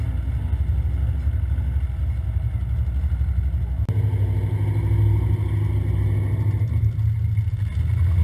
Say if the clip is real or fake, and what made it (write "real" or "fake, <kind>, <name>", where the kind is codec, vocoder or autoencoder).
real